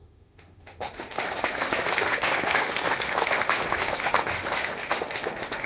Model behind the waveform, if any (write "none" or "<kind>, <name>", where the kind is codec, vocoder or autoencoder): autoencoder, DAC-VAE